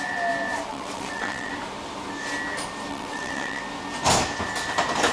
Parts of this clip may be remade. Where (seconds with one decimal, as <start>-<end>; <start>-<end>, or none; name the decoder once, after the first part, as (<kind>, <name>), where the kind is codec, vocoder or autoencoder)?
0.7-1.5 (vocoder, WaveNeXt); 2.9-3.6